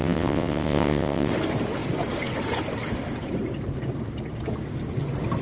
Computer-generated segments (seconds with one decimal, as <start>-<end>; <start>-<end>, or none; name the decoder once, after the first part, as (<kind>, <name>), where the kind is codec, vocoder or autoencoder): 0.0-1.3 (vocoder, WaveNeXt)